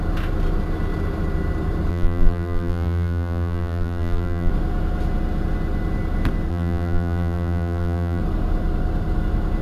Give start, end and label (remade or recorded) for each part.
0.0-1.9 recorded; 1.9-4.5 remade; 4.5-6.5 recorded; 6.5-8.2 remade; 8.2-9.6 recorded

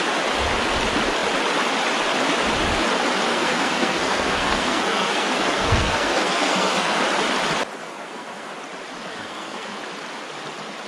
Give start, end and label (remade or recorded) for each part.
0.0-3.3 recorded; 3.3-7.0 remade; 7.0-7.8 recorded; 7.8-8.5 remade; 8.5-9.1 recorded; 9.1-9.8 remade; 9.8-10.9 recorded

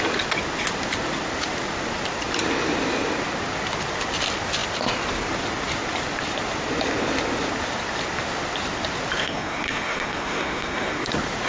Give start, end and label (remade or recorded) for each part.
0.0-9.2 recorded; 9.2-11.1 remade; 11.1-11.5 recorded